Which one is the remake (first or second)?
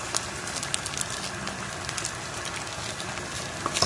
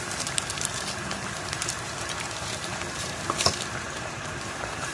second